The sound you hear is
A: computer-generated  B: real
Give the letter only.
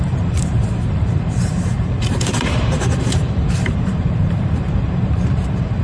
A